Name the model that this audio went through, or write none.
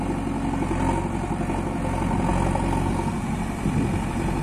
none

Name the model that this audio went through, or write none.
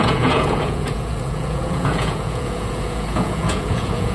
vocoder, Vocos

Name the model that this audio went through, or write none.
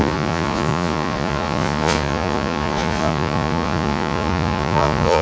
vocoder, Vocos